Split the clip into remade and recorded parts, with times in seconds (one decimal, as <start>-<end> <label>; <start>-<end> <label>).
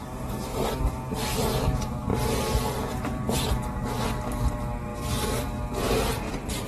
0.0-6.7 recorded